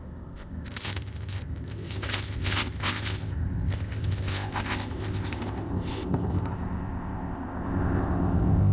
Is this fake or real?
fake